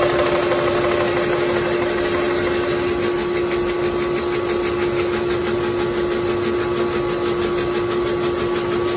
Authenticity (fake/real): real